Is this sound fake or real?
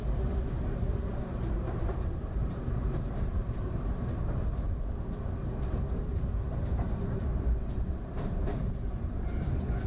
fake